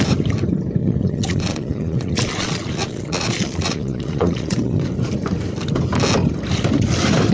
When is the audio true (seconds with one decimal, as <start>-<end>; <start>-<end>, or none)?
0.0-0.8; 4.8-7.3